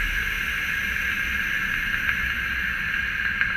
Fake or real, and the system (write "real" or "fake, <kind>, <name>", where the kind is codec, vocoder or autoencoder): real